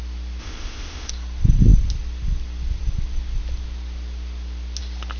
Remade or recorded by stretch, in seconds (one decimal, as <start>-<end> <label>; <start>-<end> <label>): 0.0-0.4 recorded; 0.4-1.1 remade; 1.1-5.2 recorded